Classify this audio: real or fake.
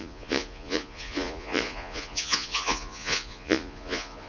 fake